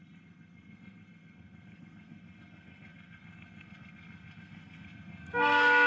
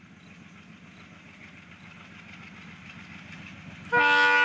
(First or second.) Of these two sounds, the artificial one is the first